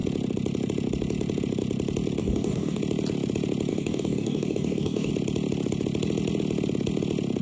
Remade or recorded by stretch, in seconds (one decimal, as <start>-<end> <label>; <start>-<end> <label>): 0.0-2.2 recorded; 2.2-2.8 remade; 2.8-3.7 recorded; 3.7-5.1 remade; 5.1-7.4 recorded